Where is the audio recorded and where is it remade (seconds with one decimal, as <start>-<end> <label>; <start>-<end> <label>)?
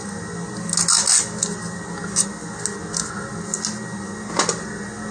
0.0-5.1 recorded